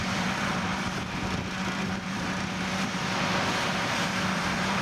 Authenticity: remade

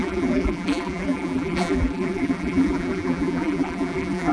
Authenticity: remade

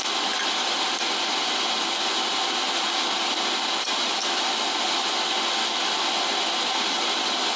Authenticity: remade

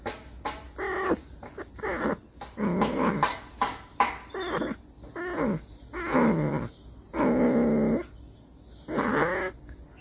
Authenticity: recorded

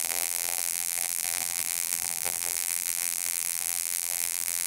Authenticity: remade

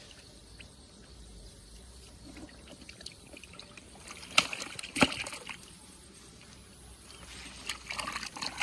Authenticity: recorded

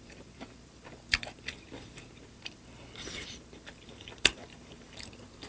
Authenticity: remade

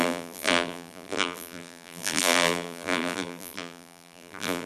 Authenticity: remade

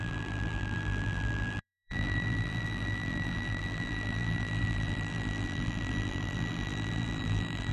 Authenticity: remade